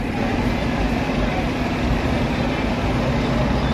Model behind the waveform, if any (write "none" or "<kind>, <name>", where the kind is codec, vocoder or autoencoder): vocoder, BigVGAN v2